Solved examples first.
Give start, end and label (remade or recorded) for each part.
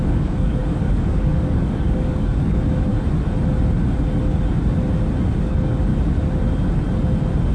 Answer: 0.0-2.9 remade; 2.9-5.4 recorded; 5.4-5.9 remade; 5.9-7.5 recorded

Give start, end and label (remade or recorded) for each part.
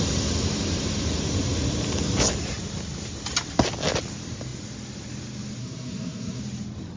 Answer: 0.0-5.6 recorded; 5.6-6.4 remade; 6.4-7.0 recorded